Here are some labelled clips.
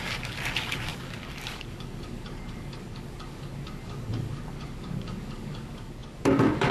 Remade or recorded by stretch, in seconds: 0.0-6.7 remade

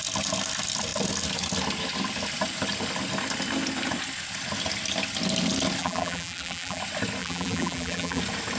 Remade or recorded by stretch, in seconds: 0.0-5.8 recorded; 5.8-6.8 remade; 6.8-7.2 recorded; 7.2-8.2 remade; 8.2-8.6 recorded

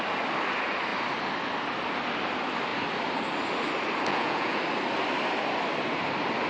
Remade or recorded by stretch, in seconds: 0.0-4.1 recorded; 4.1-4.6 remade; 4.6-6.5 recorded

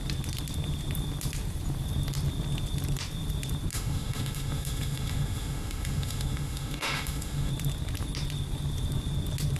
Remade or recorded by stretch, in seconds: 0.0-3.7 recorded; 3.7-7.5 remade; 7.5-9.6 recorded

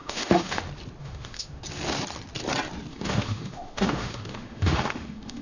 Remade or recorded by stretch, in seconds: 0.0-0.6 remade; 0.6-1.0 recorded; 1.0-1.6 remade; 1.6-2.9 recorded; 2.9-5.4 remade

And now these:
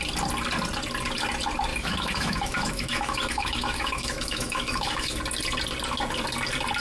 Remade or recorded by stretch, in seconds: 0.0-1.7 recorded; 1.7-5.2 remade; 5.2-6.8 recorded